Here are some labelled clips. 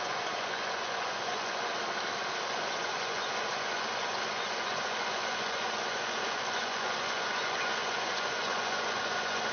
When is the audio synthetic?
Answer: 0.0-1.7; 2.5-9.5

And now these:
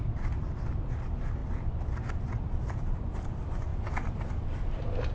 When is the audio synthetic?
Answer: none